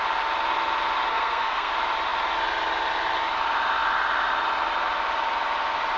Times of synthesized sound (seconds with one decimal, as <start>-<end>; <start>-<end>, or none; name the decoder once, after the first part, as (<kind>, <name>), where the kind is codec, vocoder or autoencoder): 1.1-1.7 (codec, SNAC)